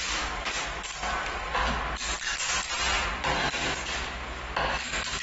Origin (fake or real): real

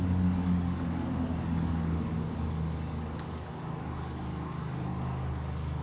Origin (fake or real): fake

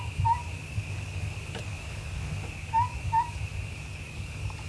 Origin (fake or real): fake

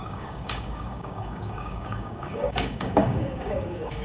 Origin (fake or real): fake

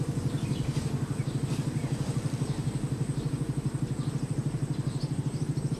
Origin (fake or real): real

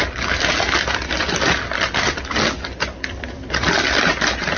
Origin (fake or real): real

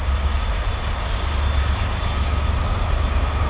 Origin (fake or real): real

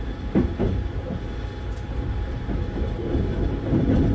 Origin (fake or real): real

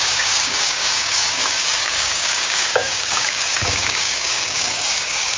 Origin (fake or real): fake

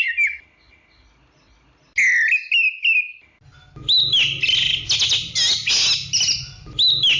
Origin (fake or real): real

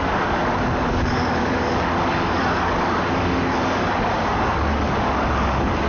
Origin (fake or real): fake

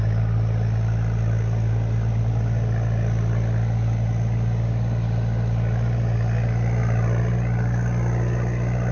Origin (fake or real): real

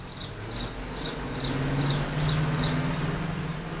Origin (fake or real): real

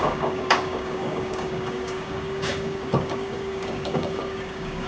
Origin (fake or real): fake